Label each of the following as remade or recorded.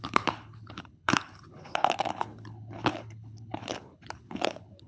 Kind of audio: remade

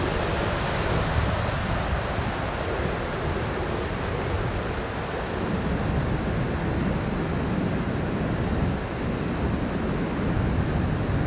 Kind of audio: recorded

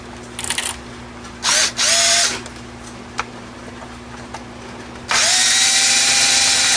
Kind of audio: recorded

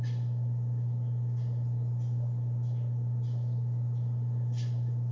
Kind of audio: recorded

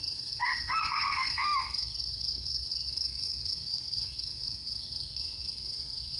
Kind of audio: remade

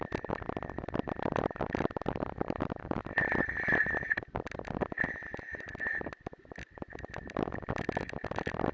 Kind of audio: recorded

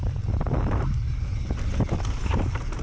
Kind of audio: recorded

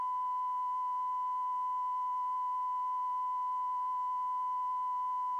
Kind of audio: recorded